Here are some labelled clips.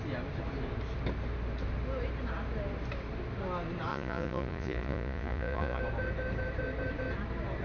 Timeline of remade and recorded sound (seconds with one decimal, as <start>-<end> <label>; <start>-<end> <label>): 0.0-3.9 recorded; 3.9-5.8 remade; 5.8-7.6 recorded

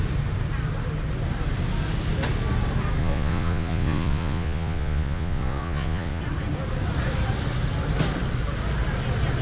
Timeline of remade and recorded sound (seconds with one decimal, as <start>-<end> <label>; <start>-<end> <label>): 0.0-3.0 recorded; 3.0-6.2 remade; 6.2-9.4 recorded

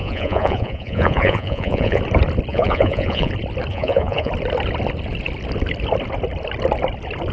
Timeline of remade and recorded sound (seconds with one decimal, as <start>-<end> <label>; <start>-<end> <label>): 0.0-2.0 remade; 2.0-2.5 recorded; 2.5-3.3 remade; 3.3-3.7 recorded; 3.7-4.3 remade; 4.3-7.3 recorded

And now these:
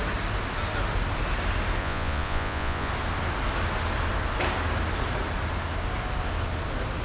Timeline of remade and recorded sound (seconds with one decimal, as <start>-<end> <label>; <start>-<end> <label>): 0.0-1.8 recorded; 1.8-2.9 remade; 2.9-7.0 recorded

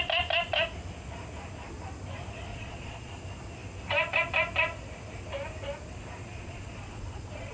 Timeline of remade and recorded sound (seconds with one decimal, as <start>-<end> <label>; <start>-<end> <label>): 0.0-2.5 recorded; 2.5-3.1 remade; 3.1-6.3 recorded; 6.3-7.5 remade

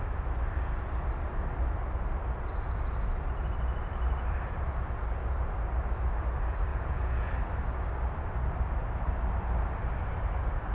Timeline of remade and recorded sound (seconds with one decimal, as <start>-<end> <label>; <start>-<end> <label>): 0.0-6.7 recorded; 6.7-7.3 remade; 7.3-10.7 recorded

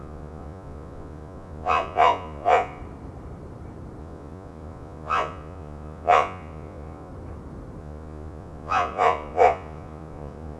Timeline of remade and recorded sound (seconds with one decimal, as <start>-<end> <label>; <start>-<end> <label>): 0.0-2.8 remade; 2.8-4.0 recorded; 4.0-7.1 remade; 7.1-7.8 recorded; 7.8-10.6 remade